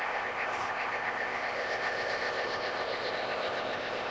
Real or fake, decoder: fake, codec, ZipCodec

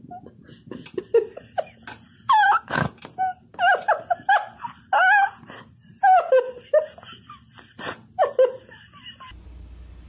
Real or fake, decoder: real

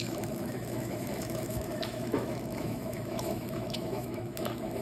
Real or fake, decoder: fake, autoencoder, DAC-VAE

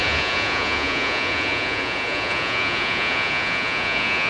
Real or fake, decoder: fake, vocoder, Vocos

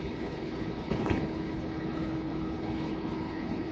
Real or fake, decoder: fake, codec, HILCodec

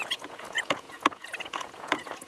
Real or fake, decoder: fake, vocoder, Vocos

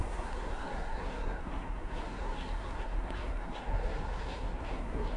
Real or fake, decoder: fake, codec, SNAC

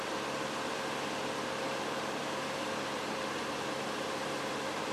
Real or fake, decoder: fake, vocoder, BigVGAN v2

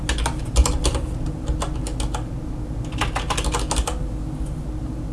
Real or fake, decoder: real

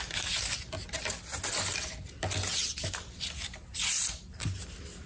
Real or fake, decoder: real